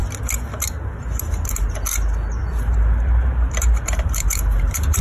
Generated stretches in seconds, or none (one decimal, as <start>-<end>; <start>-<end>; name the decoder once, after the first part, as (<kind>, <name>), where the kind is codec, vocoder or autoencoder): 2.4-5.0 (vocoder, BigVGAN v2)